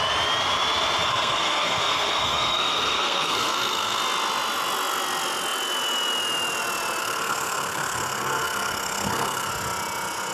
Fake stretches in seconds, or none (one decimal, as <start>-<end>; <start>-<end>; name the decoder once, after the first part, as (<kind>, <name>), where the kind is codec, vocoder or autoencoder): 1.1-4.0 (codec, SNAC); 7.0-9.5